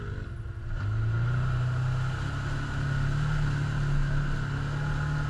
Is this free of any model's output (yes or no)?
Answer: yes